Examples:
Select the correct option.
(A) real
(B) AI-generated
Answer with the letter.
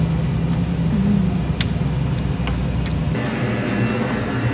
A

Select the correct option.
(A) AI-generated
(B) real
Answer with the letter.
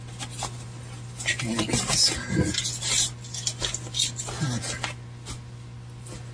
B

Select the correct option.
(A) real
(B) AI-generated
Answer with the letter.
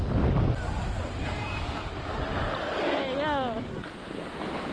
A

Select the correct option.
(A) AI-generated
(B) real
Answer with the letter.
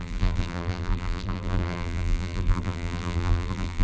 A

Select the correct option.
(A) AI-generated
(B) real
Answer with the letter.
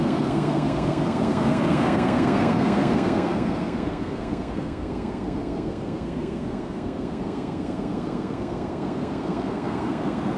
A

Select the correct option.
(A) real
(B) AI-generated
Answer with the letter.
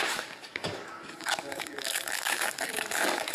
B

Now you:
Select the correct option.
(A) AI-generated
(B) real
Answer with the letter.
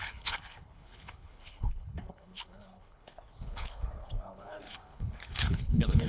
A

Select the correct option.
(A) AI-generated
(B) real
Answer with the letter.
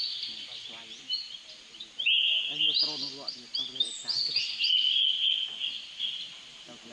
B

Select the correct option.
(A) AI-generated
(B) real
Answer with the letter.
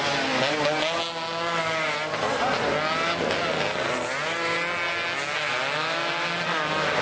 B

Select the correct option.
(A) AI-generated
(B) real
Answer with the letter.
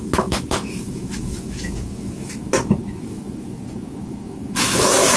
A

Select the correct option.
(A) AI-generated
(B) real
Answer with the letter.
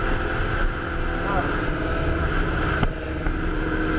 B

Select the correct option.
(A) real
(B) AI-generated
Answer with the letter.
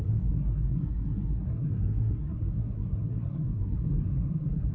B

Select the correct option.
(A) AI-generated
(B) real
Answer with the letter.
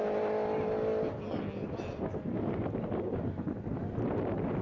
B